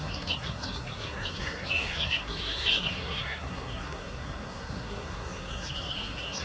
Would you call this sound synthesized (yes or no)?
yes